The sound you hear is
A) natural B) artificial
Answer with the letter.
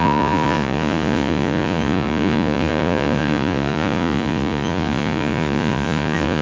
B